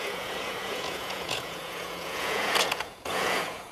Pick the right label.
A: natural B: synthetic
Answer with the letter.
B